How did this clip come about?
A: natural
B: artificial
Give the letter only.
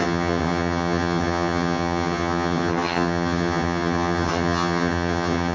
B